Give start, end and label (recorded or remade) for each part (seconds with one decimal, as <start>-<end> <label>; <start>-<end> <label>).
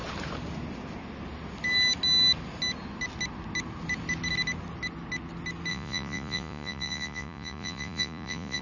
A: 0.0-5.7 recorded; 5.7-8.6 remade